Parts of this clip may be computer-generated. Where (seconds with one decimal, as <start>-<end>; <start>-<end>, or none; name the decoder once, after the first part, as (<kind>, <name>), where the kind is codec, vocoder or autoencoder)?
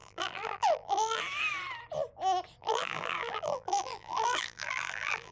0.0-1.2 (vocoder, BigVGAN v2); 2.6-5.3